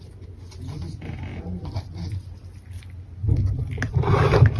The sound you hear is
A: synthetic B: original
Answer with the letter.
B